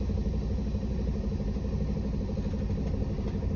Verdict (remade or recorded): recorded